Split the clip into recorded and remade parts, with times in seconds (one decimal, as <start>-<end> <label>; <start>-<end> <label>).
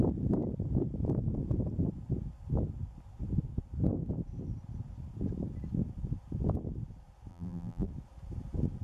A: 0.0-7.3 recorded; 7.3-7.9 remade; 7.9-8.8 recorded